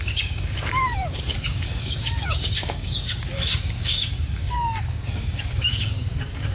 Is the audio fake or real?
fake